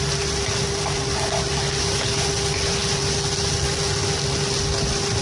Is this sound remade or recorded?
recorded